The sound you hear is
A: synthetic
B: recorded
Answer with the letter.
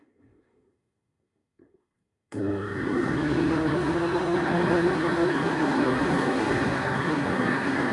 A